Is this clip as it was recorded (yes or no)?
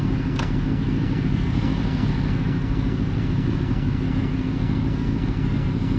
no